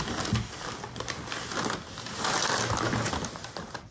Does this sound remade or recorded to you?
recorded